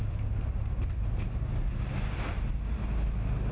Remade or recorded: recorded